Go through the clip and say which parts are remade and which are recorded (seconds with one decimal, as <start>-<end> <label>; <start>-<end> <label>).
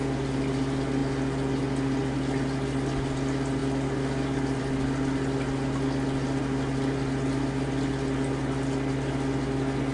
0.0-9.9 recorded